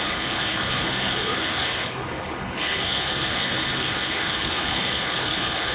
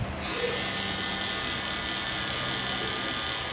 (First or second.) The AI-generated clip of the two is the first